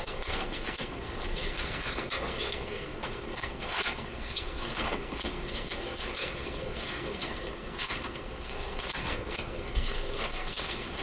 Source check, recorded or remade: remade